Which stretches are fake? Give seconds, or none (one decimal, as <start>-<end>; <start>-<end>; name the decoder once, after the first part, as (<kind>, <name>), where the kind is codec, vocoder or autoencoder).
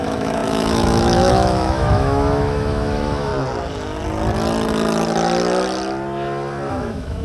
0.0-3.3 (autoencoder, DAC-VAE); 6.7-7.2